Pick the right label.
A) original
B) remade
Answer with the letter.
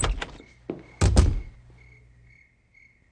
A